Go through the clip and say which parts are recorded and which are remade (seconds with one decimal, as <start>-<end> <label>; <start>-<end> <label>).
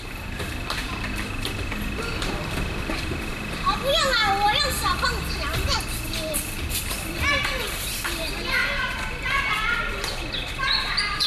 0.0-11.3 recorded